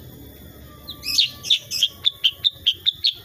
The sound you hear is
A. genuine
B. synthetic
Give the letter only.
A